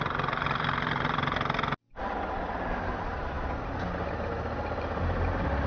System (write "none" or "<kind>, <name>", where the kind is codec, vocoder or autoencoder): none